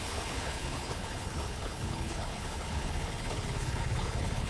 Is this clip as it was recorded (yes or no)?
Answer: no